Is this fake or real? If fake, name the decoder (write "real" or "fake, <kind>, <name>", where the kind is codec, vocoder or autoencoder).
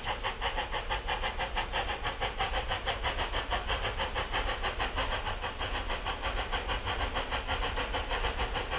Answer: real